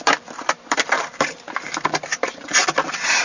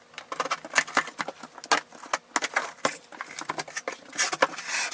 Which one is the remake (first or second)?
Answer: first